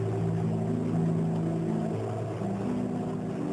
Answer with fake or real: real